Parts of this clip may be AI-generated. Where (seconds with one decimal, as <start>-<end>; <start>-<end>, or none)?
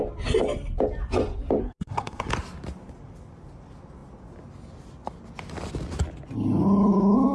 1.6-2.3